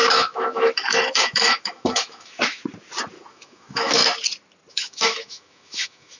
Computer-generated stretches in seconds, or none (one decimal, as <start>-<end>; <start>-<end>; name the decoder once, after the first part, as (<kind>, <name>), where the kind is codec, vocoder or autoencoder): 0.0-2.6 (autoencoder, DAC-VAE); 3.3-4.0; 4.7-6.2